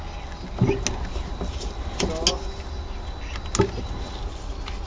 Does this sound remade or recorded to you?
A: recorded